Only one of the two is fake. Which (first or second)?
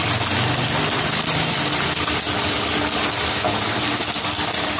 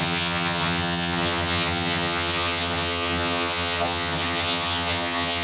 second